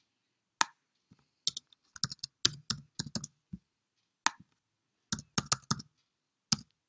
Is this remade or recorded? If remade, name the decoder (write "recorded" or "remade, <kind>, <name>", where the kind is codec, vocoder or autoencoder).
recorded